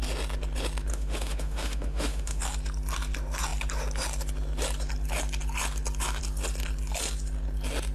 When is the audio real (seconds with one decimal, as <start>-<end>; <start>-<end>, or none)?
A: 0.0-0.9; 2.4-7.9